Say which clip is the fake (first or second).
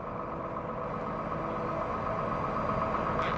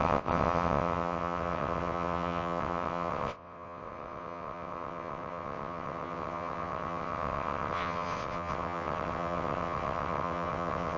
second